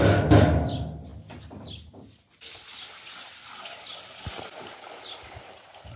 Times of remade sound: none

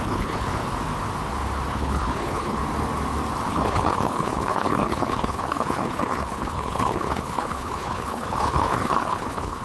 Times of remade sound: 0.0-0.6 (codec, HILCodec); 1.7-2.6; 3.5-9.6

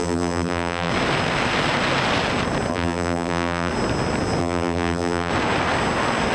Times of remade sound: 0.0-0.9 (vocoder, BigVGAN v2); 2.7-3.7; 4.4-5.3

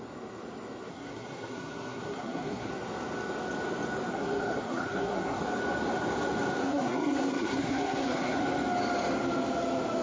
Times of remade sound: 0.9-2.7 (codec, SNAC); 4.1-5.4; 6.6-8.4

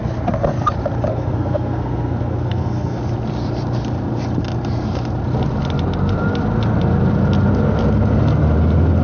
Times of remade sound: 1.1-3.0 (codec, SNAC)

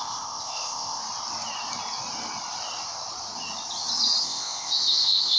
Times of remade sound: 0.0-1.0 (codec, ZipCodec); 4.2-5.4

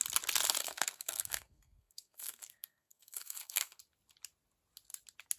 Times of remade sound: 0.6-3.8 (codec, SNAC)

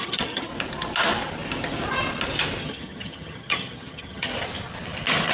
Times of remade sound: 0.0-0.5 (vocoder, HiFi-GAN); 2.6-4.3